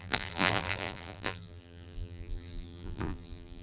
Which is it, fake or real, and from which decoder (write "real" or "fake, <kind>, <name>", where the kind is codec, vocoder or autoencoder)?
fake, vocoder, BigVGAN v2